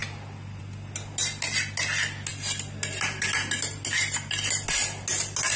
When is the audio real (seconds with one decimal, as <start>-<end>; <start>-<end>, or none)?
0.0-5.6